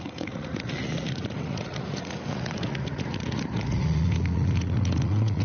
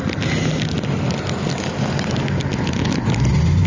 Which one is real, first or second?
second